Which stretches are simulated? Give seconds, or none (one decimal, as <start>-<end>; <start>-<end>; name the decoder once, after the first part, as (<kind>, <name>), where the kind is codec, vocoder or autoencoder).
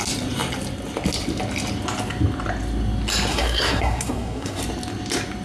3.3-4.6 (codec, SNAC)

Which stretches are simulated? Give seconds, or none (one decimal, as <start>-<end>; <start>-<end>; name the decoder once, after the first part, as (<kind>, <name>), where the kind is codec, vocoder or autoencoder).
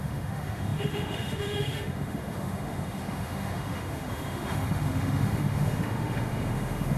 0.0-7.0 (autoencoder, DAC-VAE)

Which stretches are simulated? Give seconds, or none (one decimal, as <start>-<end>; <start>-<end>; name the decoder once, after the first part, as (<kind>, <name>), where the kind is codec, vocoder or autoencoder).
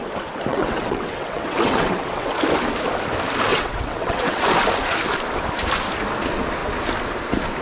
0.5-2.3 (vocoder, WaveNeXt); 3.5-4.4